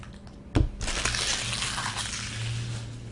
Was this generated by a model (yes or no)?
no